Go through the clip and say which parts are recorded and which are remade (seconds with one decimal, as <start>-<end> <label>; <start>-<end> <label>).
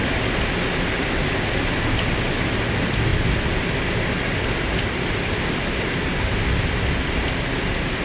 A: 0.0-8.0 recorded